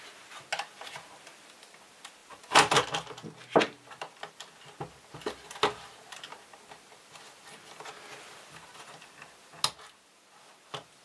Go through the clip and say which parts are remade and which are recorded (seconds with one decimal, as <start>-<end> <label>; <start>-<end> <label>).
0.0-11.0 recorded